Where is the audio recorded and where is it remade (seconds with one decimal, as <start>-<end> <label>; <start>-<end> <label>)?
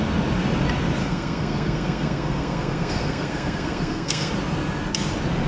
0.0-1.0 recorded; 1.0-4.3 remade; 4.3-5.5 recorded